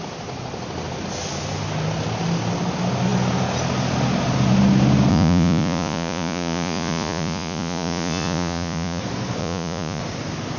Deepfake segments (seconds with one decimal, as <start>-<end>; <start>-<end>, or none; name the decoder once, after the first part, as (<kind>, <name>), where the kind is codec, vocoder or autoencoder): 5.1-9.0 (vocoder, Vocos); 9.4-10.0